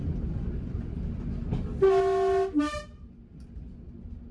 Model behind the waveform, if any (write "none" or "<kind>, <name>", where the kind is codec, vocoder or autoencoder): none